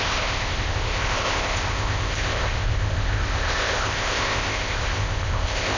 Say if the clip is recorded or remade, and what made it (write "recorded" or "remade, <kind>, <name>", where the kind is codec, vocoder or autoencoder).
remade, codec, ZipCodec